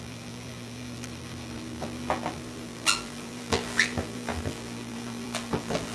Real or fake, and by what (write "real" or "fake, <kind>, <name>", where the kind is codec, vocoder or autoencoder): fake, vocoder, BigVGAN v2